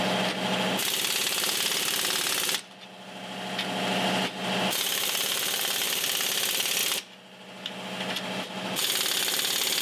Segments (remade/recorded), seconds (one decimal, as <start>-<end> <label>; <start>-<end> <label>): 0.0-9.8 recorded